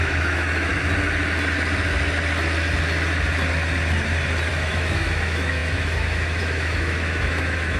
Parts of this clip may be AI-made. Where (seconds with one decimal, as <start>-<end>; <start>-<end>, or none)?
0.0-0.7; 4.5-7.8